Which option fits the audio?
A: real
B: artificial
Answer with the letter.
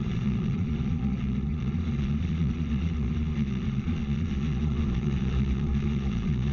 B